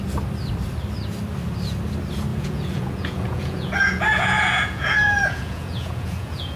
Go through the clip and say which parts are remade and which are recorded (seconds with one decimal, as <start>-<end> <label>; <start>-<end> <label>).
0.0-2.3 recorded; 2.3-6.6 remade